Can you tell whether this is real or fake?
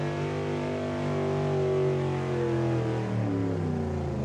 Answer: real